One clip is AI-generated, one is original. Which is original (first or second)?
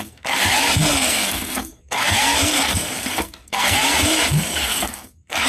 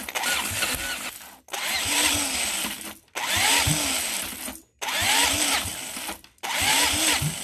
second